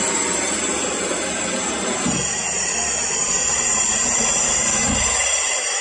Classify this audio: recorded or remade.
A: recorded